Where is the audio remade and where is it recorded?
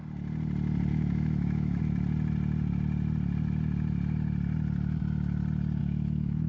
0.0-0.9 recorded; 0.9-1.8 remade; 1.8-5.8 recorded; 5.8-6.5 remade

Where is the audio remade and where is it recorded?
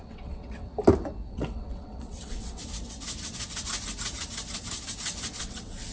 0.0-0.7 remade; 0.7-1.3 recorded; 1.3-2.6 remade; 2.6-5.4 recorded; 5.4-5.9 remade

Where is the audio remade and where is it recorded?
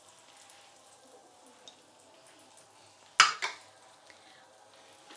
0.0-5.2 recorded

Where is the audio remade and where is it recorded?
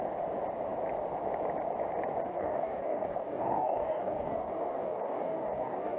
0.0-2.3 recorded; 2.3-6.0 remade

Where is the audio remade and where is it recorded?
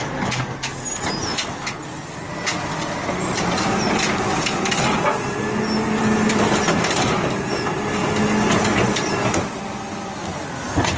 0.0-11.0 recorded